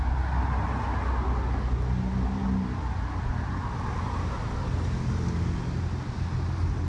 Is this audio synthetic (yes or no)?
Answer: no